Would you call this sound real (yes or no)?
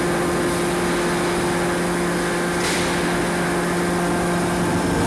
yes